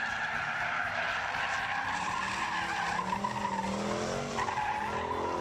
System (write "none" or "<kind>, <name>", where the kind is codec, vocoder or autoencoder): none